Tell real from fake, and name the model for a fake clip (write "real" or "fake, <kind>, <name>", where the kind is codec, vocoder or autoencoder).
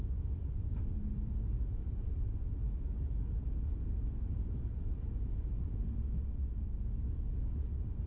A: fake, vocoder, BigVGAN v2